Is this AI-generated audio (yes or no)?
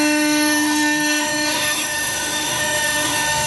yes